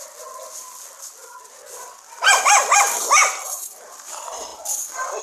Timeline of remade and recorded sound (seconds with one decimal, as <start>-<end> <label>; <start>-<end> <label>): 0.0-3.2 recorded; 3.2-3.8 remade; 3.8-4.5 recorded; 4.5-5.2 remade